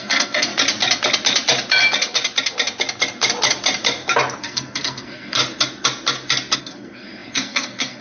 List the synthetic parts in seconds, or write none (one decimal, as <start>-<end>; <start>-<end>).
0.0-0.5; 4.4-5.4; 6.6-8.0